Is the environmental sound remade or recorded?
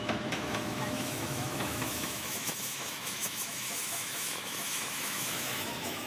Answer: remade